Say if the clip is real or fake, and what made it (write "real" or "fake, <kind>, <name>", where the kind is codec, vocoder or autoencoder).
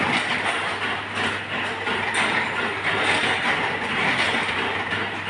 real